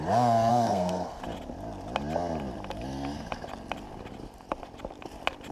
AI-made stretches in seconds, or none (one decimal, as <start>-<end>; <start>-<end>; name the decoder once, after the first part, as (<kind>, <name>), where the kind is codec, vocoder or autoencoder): 0.5-1.2 (codec, SNAC)